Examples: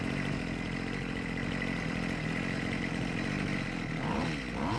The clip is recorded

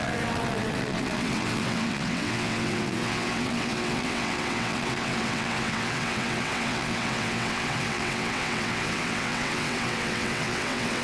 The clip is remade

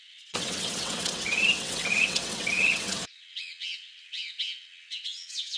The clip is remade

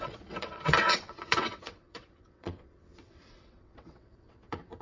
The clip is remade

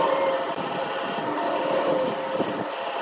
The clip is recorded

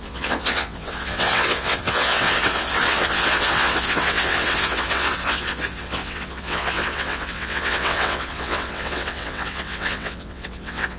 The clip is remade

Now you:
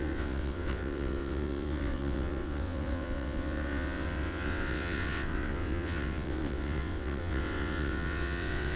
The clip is remade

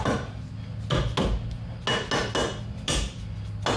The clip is recorded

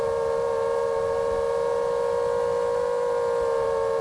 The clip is recorded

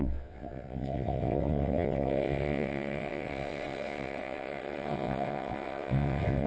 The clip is remade